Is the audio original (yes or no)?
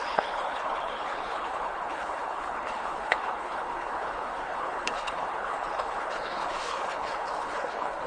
no